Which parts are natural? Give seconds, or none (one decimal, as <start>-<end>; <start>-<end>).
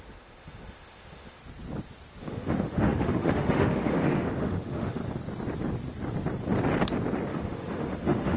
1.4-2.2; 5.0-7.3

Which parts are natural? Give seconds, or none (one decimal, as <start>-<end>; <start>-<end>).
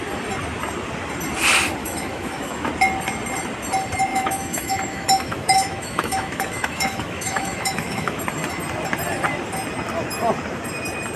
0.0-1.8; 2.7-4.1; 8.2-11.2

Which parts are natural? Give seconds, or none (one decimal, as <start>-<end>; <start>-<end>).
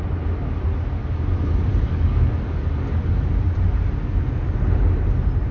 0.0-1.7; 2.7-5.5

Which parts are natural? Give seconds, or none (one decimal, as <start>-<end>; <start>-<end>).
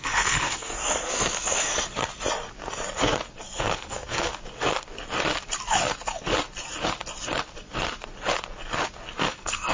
1.7-3.6; 4.3-9.2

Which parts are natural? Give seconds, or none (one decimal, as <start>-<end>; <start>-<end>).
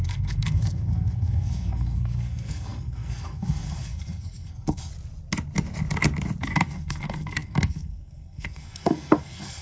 4.9-6.4